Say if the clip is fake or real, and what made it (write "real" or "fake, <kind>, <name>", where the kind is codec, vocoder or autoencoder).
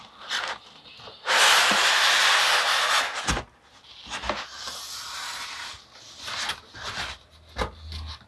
real